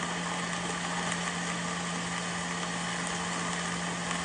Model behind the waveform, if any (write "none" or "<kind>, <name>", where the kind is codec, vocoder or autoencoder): none